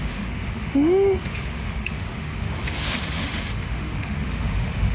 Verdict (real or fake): fake